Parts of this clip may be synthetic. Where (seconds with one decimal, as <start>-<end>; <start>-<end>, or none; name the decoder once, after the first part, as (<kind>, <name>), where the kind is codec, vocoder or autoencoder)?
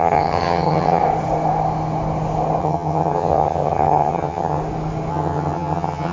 0.0-1.0 (vocoder, HiFi-GAN); 2.6-4.6; 5.1-6.1